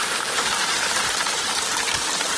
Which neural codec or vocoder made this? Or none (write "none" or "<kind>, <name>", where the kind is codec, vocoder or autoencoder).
vocoder, BigVGAN v2